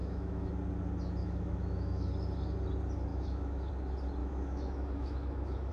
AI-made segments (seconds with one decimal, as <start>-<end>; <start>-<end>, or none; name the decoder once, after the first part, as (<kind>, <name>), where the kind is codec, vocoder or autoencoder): 0.0-0.5 (autoencoder, DAC-VAE); 1.2-2.1; 3.1-3.7; 4.2-5.7